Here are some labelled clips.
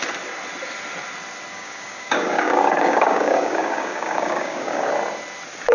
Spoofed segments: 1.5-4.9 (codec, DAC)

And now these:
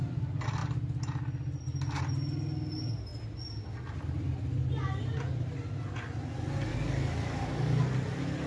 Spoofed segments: 6.7-7.8 (codec, DAC)

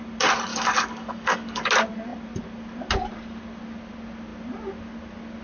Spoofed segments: 0.5-1.7 (codec, DAC)

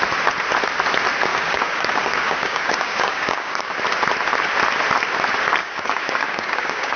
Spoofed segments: 1.3-3.8 (codec, DAC); 5.6-7.0